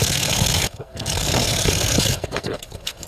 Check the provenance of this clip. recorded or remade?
remade